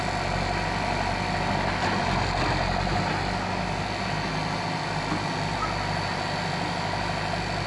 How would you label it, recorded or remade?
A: recorded